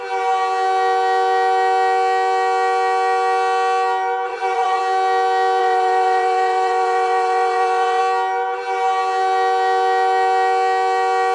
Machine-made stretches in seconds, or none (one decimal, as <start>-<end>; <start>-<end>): 4.3-4.8; 5.6-8.0